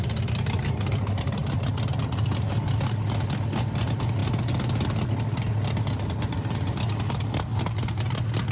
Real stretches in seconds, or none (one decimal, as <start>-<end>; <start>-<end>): 0.0-8.5